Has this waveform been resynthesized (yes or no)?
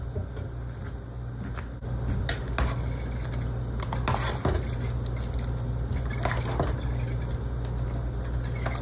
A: no